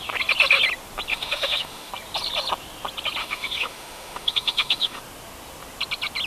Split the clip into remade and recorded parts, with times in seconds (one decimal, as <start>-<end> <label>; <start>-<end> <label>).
0.0-1.1 recorded; 1.1-1.9 remade; 1.9-3.2 recorded; 3.2-5.0 remade; 5.0-6.3 recorded